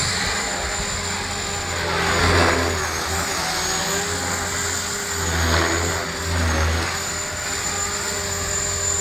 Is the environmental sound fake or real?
real